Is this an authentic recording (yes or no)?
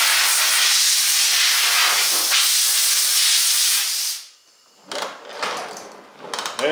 yes